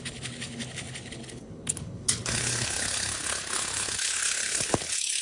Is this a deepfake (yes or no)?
yes